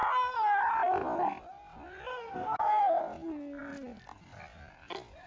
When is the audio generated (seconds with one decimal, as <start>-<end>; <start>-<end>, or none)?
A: 2.1-3.0